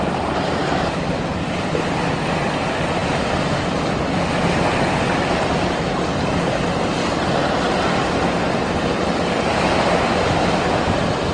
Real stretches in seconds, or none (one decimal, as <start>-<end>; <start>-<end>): 0.0-11.3